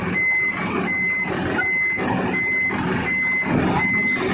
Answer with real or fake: real